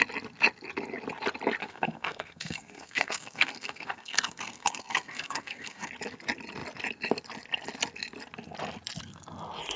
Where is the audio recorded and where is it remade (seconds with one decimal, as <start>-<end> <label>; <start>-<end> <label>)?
0.0-1.6 recorded; 1.6-5.9 remade; 5.9-9.8 recorded